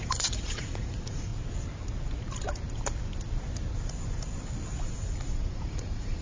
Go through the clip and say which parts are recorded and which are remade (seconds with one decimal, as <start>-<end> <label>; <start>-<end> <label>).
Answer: 0.0-1.3 remade; 1.3-4.8 recorded; 4.8-6.2 remade